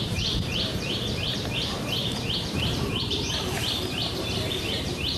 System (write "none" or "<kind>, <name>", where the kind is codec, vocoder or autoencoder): vocoder, BigVGAN v2